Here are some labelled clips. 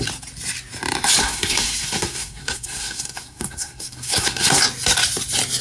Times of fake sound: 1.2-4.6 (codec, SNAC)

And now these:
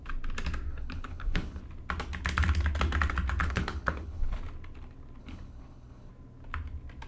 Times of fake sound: 0.7-1.6 (codec, HILCodec); 3.4-4.4; 5.2-6.1

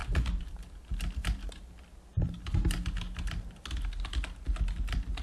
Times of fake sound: 0.0-0.7 (vocoder, BigVGAN v2)

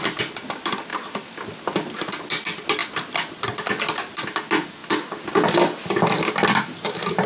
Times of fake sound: none

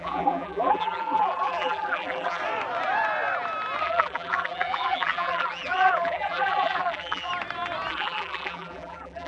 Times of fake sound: 0.0-2.4 (vocoder, BigVGAN v2); 3.8-7.3; 7.9-9.3

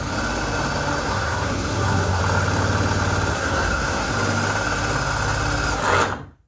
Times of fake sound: 1.0-2.2 (codec, SNAC); 3.3-4.1

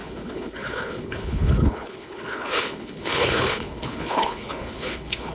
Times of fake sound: 0.0-5.3 (codec, HILCodec)

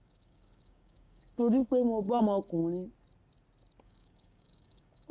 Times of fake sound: 0.0-2.6 (codec, DAC); 3.8-5.1